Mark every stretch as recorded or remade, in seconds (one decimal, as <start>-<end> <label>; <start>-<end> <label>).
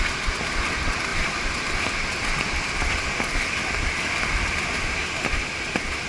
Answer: 0.0-6.1 recorded